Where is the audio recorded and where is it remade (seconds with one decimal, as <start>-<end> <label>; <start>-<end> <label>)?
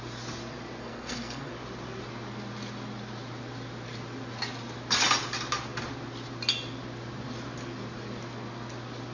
0.0-0.8 recorded; 0.8-1.5 remade; 1.5-9.1 recorded